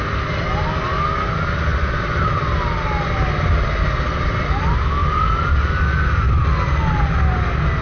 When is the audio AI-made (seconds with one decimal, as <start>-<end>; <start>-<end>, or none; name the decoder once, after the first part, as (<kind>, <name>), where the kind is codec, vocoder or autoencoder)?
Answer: none